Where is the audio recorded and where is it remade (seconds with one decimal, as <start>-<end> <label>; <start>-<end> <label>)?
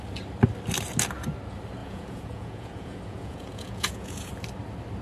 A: 0.0-1.8 recorded; 1.8-4.3 remade; 4.3-5.0 recorded